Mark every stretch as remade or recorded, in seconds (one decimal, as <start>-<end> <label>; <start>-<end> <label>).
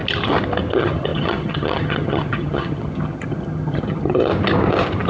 0.0-0.7 recorded; 0.7-4.3 remade; 4.3-5.1 recorded